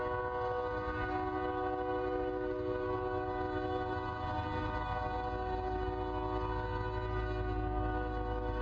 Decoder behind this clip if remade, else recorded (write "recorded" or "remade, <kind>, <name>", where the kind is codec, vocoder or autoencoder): recorded